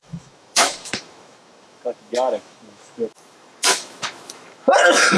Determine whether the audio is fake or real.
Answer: fake